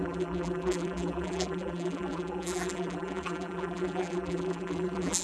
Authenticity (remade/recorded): remade